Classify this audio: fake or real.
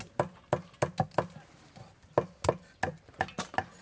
real